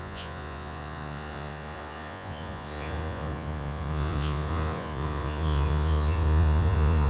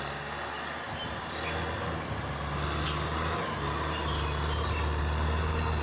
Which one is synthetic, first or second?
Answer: first